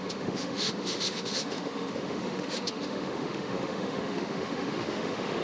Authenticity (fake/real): fake